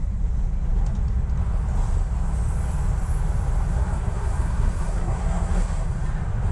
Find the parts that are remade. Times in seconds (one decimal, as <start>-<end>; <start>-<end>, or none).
3.7-5.9